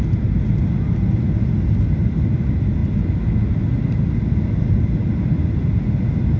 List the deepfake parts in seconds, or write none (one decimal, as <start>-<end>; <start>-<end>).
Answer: none